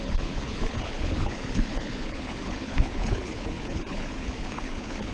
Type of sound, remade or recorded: remade